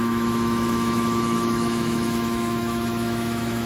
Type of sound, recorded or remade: remade